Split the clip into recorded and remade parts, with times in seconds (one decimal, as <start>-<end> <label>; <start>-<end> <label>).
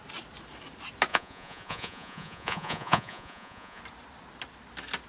0.0-1.1 recorded; 1.1-3.8 remade; 3.8-5.1 recorded